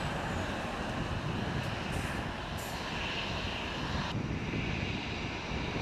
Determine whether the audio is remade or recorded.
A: recorded